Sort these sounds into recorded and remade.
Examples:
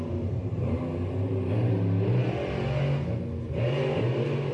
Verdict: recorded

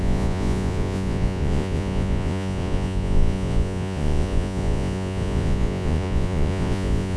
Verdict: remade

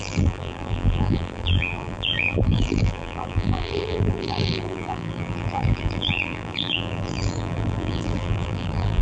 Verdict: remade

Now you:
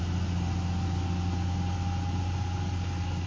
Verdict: recorded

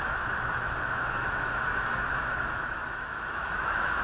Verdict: remade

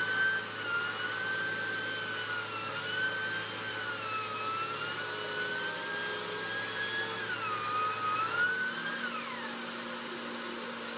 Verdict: recorded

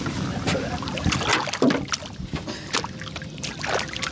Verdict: recorded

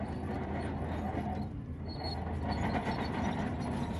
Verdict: recorded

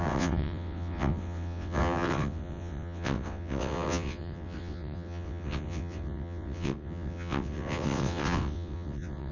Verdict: remade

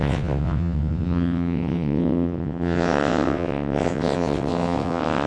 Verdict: remade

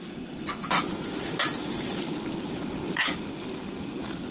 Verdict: recorded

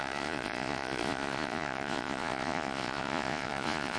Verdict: remade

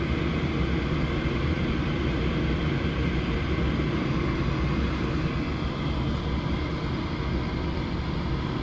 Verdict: recorded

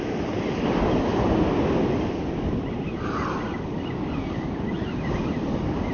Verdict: recorded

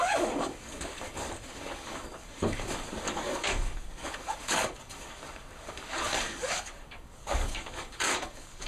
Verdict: remade